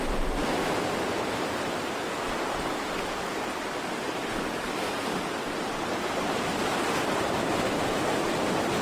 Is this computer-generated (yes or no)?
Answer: no